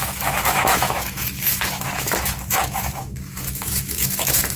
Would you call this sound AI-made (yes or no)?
yes